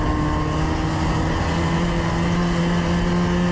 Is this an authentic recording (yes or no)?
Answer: yes